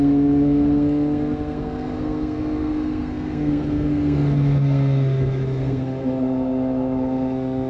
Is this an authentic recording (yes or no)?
no